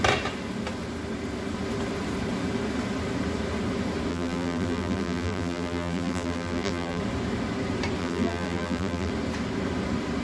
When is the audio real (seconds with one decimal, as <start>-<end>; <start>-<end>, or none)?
0.0-4.1; 7.0-8.0; 9.1-10.2